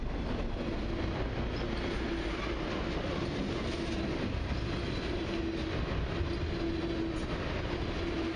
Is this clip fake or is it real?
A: real